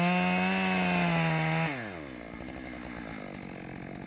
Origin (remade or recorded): recorded